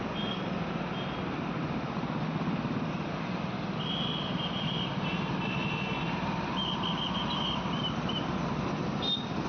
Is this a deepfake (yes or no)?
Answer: no